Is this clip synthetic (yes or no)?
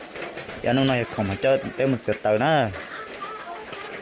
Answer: no